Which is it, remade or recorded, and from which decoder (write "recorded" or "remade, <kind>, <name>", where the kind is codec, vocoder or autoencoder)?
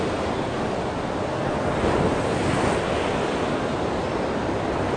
recorded